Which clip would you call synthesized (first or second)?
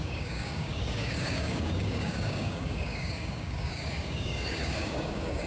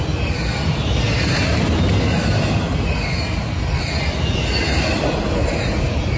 first